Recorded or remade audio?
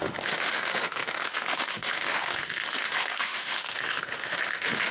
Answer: remade